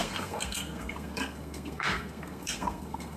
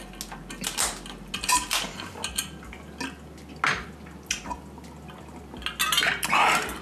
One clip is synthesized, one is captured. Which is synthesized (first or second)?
first